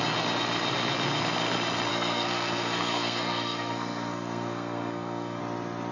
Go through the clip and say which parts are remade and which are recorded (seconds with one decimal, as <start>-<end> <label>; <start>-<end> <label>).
0.0-1.9 recorded; 1.9-5.4 remade; 5.4-5.9 recorded